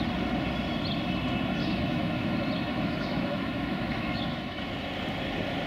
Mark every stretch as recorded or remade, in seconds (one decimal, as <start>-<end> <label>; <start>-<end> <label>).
0.0-1.6 recorded; 1.6-2.3 remade; 2.3-2.7 recorded; 2.7-4.7 remade; 4.7-5.7 recorded